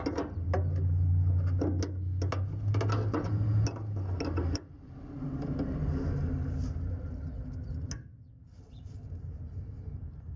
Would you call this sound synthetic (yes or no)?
no